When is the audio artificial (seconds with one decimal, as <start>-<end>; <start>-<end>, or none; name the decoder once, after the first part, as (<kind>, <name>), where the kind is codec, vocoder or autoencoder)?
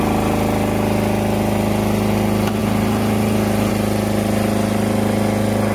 none